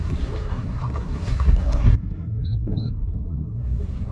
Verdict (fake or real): fake